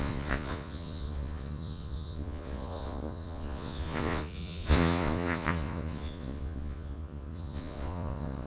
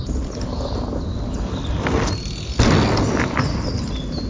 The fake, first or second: first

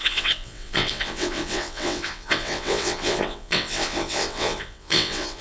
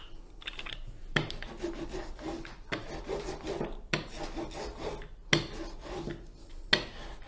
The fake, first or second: first